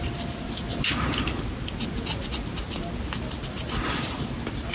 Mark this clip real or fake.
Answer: fake